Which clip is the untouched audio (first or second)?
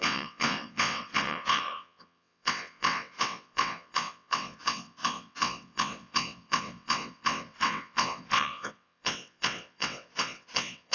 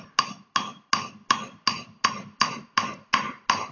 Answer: second